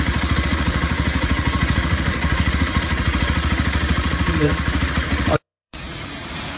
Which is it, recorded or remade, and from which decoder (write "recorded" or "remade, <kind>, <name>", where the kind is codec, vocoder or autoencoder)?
remade, vocoder, Vocos